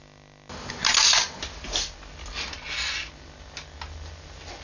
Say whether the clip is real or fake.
real